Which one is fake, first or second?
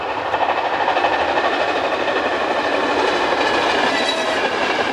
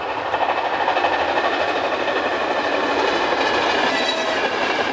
first